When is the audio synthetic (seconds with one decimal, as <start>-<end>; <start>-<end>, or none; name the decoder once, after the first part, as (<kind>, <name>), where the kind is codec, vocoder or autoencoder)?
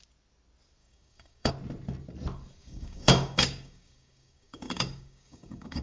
0.8-1.5 (codec, DAC); 2.6-5.8